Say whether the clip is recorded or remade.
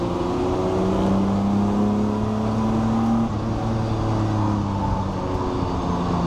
recorded